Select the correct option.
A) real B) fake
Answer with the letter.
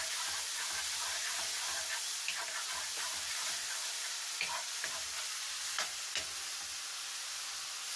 A